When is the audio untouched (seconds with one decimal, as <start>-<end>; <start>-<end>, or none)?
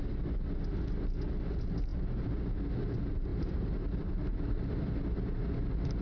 0.0-3.3; 4.7-6.0